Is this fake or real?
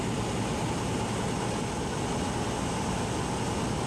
real